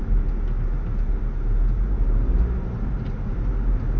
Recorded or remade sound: recorded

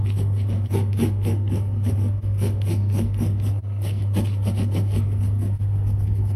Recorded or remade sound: remade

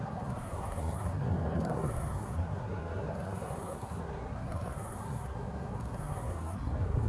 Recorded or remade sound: remade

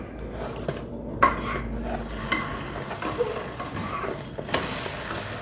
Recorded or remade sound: recorded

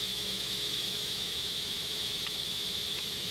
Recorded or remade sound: remade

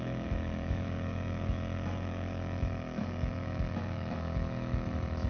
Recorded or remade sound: remade